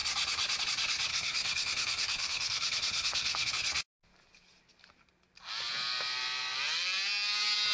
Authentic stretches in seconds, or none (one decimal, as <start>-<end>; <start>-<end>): 0.0-1.1; 3.5-7.7